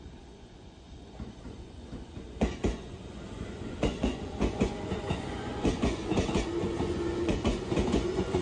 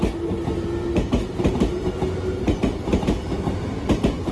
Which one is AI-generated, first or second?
first